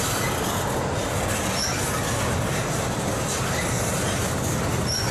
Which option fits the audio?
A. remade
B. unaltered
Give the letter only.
B